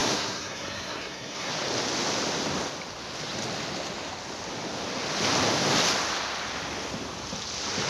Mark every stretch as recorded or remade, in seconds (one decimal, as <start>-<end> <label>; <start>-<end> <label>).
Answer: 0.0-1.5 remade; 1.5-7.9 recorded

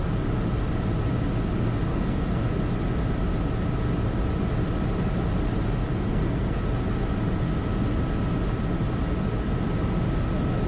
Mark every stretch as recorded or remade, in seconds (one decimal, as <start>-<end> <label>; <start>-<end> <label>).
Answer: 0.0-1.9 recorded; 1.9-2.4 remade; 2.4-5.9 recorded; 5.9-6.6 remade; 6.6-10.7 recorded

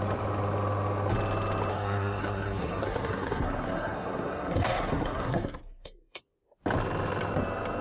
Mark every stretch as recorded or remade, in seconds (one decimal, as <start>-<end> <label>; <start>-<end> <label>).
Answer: 0.0-1.7 recorded; 1.7-6.2 remade; 6.2-7.8 recorded

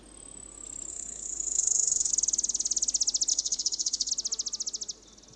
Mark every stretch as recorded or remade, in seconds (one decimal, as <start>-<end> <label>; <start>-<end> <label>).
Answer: 0.0-0.9 recorded; 0.9-2.1 remade; 2.1-3.3 recorded; 3.3-4.1 remade; 4.1-5.4 recorded

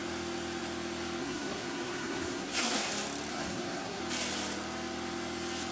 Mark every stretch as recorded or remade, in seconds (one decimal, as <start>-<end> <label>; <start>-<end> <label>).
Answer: 0.0-1.2 recorded; 1.2-2.9 remade; 2.9-3.3 recorded; 3.3-4.0 remade; 4.0-5.7 recorded

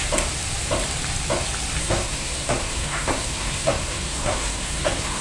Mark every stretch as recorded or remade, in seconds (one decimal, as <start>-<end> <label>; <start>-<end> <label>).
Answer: 0.0-1.8 recorded; 1.8-5.2 remade

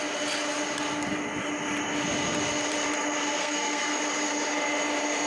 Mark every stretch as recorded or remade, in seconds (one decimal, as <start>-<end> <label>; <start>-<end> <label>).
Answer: 0.0-3.4 recorded; 3.4-4.0 remade; 4.0-5.3 recorded